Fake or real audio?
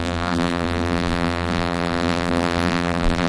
fake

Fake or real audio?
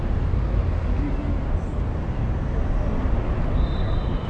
real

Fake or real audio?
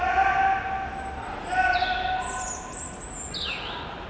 real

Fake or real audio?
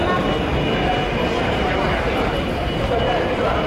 real